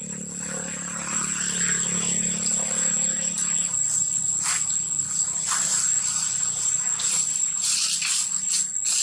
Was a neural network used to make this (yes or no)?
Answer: no